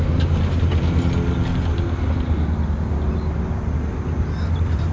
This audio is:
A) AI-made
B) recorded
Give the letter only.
B